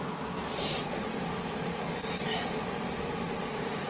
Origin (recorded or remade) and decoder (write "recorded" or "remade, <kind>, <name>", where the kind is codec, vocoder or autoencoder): recorded